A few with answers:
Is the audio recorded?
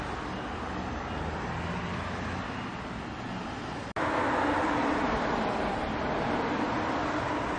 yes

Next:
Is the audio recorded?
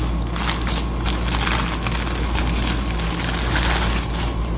yes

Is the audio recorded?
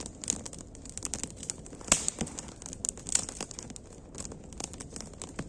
yes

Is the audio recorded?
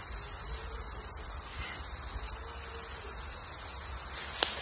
yes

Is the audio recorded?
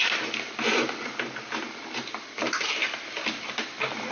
yes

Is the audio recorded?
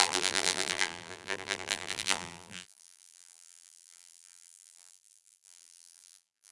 no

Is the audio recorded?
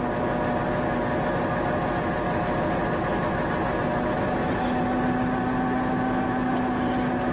yes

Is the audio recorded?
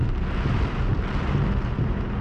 yes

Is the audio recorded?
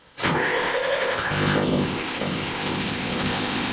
no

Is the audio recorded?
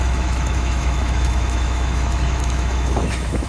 no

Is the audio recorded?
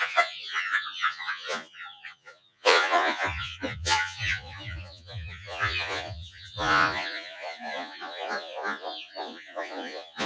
no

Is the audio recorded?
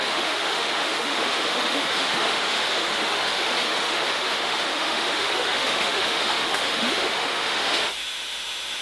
no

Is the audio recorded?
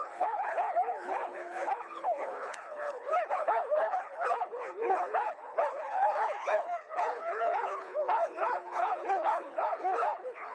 no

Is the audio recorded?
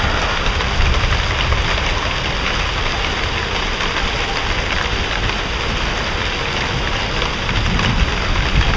yes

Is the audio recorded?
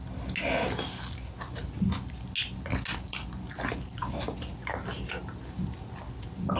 yes